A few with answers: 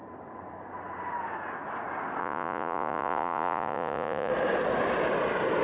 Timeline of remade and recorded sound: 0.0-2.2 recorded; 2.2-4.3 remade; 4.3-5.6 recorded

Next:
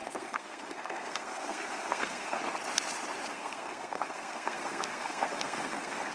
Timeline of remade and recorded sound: 0.0-2.4 remade; 2.4-3.3 recorded; 3.3-6.1 remade

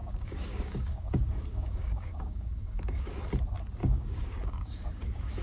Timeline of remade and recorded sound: 0.0-3.2 remade; 3.2-3.8 recorded; 3.8-5.4 remade

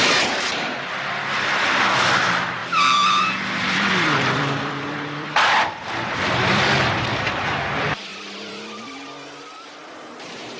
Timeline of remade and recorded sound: 0.0-10.6 remade

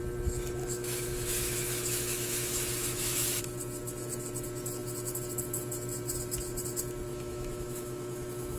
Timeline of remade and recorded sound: 0.0-0.6 recorded; 0.6-3.4 remade; 3.4-7.1 recorded; 7.1-8.6 remade